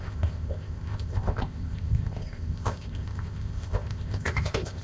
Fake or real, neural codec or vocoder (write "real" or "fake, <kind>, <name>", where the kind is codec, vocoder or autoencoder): fake, codec, ZipCodec